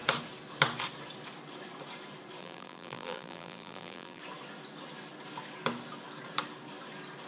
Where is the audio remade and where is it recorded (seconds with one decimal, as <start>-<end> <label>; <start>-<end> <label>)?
0.0-2.4 recorded; 2.4-4.2 remade; 4.2-7.3 recorded